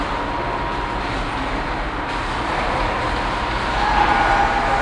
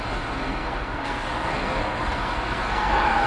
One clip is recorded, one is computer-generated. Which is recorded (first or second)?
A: first